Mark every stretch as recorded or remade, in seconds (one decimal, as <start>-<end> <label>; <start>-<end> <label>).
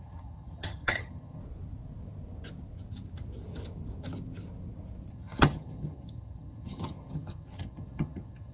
0.0-1.4 remade; 1.4-5.1 recorded; 5.1-8.5 remade